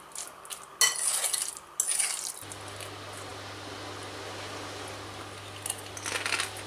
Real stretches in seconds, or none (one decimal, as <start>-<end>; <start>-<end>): 0.0-6.7